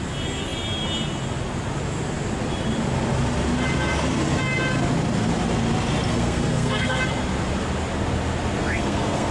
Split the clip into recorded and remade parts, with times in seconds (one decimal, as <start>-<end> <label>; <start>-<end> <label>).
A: 0.0-6.1 recorded; 6.1-7.0 remade; 7.0-8.6 recorded; 8.6-9.3 remade